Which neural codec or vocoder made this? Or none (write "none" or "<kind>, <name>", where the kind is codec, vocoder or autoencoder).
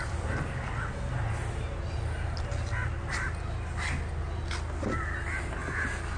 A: none